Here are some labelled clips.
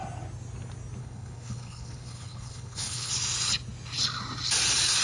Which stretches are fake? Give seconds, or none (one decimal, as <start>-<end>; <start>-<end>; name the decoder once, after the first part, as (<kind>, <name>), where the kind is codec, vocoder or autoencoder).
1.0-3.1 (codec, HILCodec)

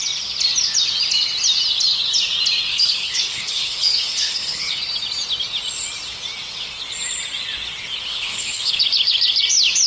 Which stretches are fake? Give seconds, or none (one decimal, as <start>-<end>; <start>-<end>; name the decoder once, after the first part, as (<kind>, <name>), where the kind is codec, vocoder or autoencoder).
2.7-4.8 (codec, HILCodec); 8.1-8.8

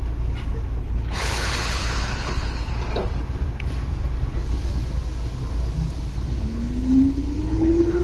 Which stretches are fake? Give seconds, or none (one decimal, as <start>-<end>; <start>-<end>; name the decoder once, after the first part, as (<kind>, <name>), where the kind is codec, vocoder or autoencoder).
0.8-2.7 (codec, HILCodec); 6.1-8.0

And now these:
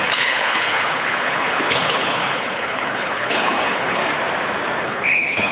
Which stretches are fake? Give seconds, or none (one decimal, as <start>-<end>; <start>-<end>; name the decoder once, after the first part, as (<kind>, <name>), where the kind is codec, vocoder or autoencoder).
0.0-4.0 (codec, HILCodec); 4.8-5.5

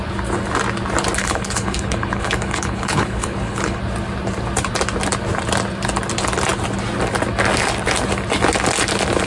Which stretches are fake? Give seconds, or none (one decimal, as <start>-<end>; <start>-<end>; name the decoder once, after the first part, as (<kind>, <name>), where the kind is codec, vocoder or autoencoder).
1.2-3.8 (codec, HILCodec)

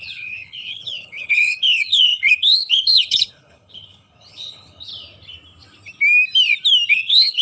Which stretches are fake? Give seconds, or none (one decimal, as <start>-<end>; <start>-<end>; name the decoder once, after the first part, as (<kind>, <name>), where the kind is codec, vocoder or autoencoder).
0.0-4.9 (codec, HILCodec); 6.9-7.4

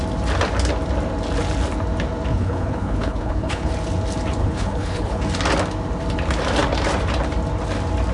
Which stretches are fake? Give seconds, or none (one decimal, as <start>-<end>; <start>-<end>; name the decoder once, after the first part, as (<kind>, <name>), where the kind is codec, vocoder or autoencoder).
2.3-3.7 (codec, HILCodec); 4.4-5.2

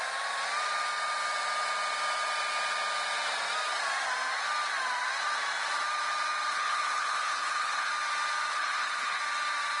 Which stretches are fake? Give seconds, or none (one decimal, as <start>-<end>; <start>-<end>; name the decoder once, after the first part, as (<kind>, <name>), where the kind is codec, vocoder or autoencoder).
6.5-7.9 (codec, HILCodec); 8.5-9.2